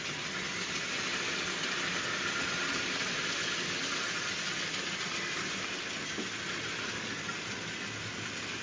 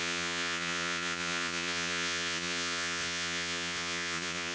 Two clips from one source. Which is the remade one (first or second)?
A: second